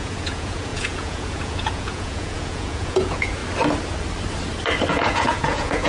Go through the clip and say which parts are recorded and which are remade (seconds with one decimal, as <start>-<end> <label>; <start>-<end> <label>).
0.0-3.4 remade; 3.4-4.9 recorded; 4.9-5.9 remade